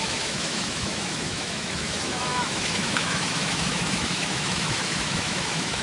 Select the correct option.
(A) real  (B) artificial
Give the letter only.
B